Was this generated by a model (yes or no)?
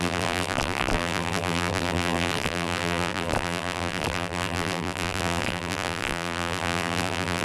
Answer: yes